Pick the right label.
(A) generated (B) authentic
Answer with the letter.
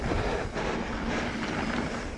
B